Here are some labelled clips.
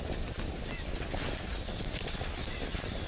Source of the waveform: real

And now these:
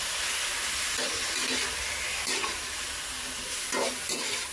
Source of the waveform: real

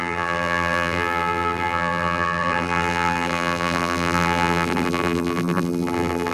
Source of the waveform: fake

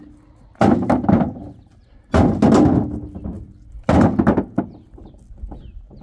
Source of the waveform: real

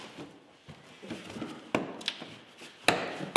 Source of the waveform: real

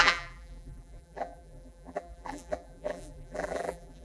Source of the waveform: fake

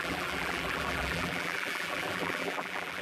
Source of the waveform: fake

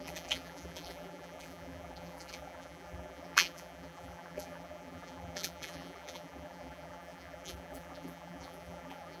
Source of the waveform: fake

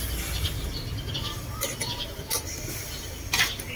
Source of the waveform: real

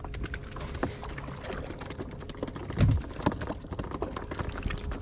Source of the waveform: real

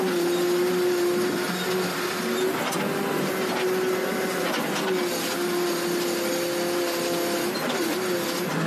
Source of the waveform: real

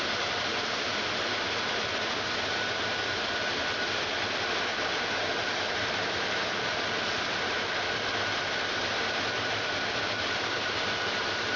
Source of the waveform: fake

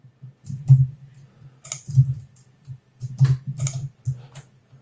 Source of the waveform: real